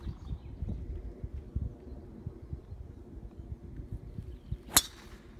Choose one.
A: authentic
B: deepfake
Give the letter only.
A